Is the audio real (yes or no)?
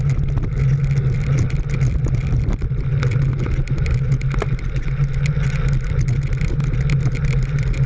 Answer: yes